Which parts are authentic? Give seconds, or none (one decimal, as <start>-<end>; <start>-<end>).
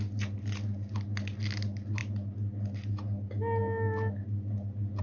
0.0-5.0